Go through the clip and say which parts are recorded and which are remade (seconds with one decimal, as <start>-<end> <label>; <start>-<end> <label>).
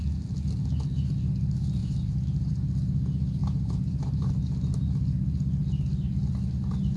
0.0-1.8 recorded; 1.8-2.5 remade; 2.5-3.4 recorded; 3.4-4.3 remade; 4.3-7.0 recorded